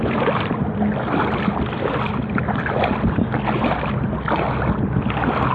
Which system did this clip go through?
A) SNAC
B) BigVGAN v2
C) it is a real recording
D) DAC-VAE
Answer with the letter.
C